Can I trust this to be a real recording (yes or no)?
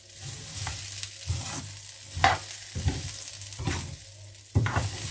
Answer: yes